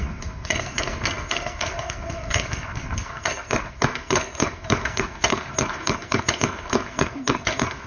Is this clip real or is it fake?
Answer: fake